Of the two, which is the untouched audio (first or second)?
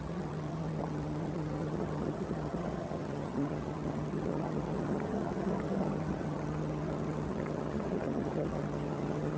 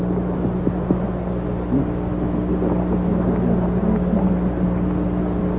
second